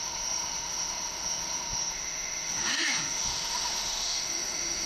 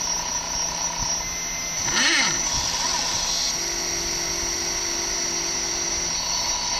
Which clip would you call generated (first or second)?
first